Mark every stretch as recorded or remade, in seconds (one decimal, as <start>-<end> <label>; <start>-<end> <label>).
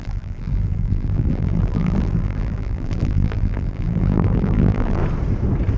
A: 0.0-5.0 remade; 5.0-5.8 recorded